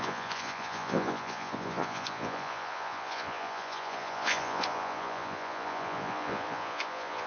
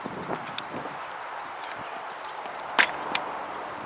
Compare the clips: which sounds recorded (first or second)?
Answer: second